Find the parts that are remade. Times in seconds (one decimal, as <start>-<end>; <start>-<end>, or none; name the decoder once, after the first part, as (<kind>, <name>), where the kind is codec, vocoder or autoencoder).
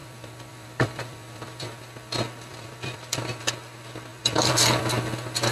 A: 0.0-1.8 (vocoder, BigVGAN v2); 2.5-3.4; 4.1-4.8